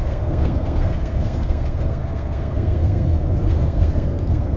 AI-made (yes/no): yes